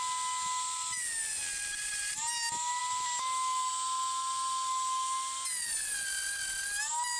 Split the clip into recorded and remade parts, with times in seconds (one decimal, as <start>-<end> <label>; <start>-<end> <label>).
0.0-1.7 recorded; 1.7-2.2 remade; 2.2-7.2 recorded